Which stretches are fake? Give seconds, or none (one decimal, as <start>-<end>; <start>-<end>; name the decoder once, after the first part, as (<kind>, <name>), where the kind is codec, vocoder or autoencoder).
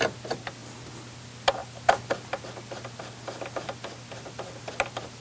none